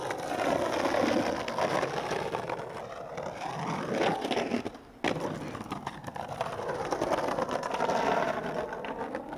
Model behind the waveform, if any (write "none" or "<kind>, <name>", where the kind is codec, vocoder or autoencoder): none